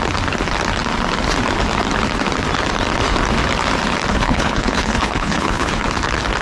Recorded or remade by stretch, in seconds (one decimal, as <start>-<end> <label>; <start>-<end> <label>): 0.0-4.1 recorded; 4.1-5.8 remade; 5.8-6.4 recorded